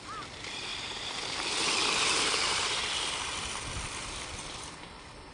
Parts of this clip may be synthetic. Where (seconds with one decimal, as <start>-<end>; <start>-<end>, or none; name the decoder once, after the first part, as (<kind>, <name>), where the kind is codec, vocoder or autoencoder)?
0.7-2.8 (vocoder, BigVGAN v2)